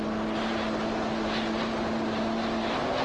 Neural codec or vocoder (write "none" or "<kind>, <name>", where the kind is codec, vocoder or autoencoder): none